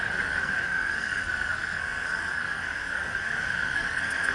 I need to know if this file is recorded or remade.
remade